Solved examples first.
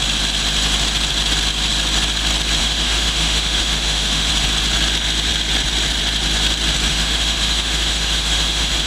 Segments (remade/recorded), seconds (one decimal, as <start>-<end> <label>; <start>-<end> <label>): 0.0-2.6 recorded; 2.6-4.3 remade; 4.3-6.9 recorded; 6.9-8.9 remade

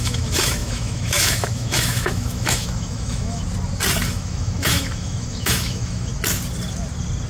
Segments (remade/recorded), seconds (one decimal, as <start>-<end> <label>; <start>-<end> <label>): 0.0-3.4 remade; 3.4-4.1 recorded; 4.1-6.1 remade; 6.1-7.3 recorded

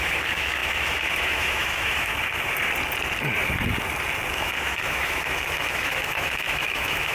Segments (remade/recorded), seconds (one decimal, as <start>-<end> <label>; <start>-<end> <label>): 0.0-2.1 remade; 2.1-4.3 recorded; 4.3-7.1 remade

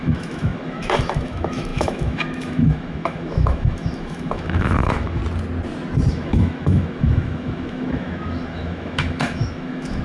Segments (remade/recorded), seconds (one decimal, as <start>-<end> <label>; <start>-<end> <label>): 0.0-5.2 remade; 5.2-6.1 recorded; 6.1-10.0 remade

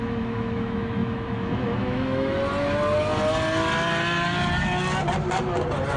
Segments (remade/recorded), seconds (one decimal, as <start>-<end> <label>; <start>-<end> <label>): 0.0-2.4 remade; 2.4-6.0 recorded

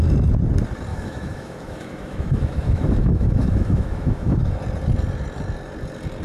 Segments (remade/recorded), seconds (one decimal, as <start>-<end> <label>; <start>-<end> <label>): 0.0-0.9 recorded; 0.9-4.6 remade; 4.6-6.2 recorded